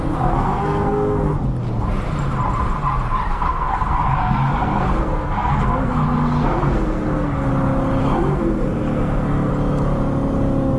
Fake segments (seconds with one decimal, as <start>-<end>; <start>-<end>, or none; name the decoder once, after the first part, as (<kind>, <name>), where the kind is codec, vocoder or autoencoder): 0.0-1.3 (codec, SNAC); 3.3-7.5; 8.0-9.5